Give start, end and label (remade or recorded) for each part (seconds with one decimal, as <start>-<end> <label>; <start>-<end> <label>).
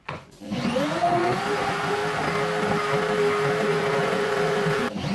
0.0-2.0 remade; 2.0-3.6 recorded; 3.6-5.1 remade